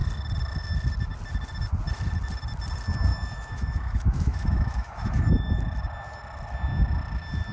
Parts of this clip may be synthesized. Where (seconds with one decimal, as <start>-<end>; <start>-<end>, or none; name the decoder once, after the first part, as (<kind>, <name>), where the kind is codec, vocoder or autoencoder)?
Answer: 3.1-5.6 (autoencoder, DAC-VAE)